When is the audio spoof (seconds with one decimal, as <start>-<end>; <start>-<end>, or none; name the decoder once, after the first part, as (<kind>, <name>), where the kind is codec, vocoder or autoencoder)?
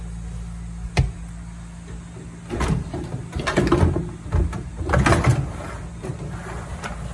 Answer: none